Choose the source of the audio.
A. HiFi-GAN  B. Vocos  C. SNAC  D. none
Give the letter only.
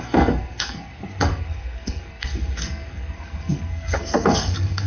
C